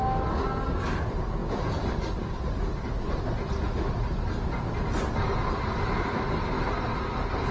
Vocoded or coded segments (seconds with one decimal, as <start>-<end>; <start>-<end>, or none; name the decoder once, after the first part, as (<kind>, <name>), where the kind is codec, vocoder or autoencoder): none